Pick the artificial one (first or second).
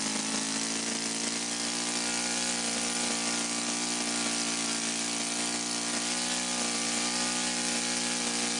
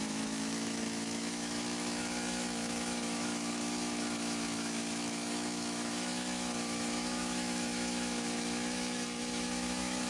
second